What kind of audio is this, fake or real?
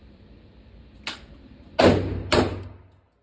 real